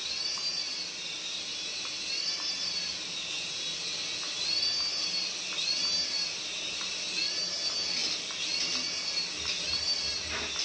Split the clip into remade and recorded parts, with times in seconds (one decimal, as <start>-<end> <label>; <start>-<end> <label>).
0.0-10.6 recorded